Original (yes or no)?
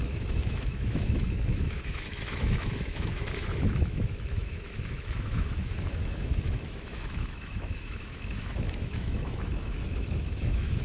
no